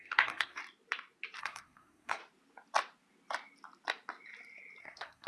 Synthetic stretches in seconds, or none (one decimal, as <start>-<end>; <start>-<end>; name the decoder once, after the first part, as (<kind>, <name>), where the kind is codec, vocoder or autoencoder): 0.0-0.6 (codec, SNAC); 1.4-2.2; 4.8-5.3